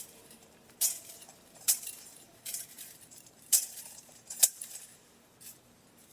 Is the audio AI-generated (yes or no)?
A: yes